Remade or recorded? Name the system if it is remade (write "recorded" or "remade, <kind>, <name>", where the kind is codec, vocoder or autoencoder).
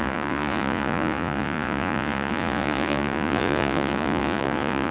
remade, vocoder, Vocos